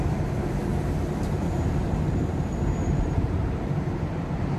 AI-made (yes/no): yes